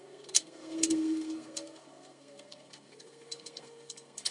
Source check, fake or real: fake